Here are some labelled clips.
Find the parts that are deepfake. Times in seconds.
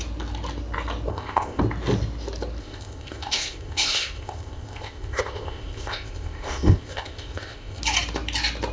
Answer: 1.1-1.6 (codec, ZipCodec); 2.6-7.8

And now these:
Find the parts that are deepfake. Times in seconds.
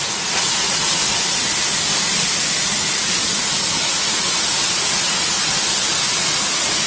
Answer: 0.0-1.0 (vocoder, Vocos); 2.8-5.5; 6.1-6.9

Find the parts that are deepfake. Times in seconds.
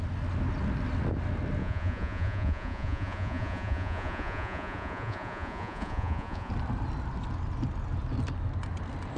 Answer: 1.6-6.5 (vocoder, Vocos)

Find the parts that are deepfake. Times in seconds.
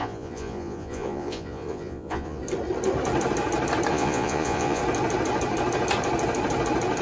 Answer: 0.0-2.4 (vocoder, Vocos); 3.9-4.8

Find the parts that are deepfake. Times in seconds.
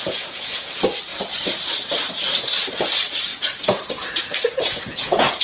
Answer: 0.0-0.7 (vocoder, Vocos); 3.3-5.4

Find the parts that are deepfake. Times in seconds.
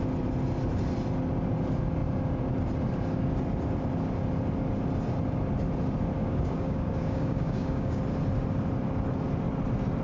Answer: 6.2-8.0 (codec, DAC)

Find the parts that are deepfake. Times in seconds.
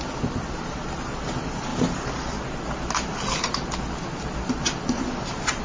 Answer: none